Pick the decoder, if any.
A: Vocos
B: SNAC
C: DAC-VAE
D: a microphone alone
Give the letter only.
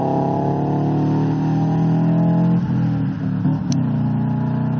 D